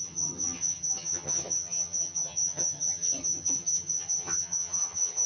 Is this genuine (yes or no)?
no